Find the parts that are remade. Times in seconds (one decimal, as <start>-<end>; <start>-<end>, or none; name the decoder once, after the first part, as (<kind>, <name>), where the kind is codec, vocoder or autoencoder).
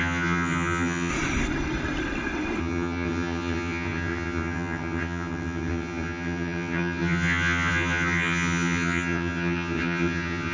0.0-1.1 (vocoder, HiFi-GAN); 2.6-10.5